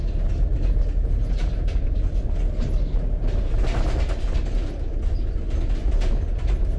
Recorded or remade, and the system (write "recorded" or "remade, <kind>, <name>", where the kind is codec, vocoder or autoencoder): recorded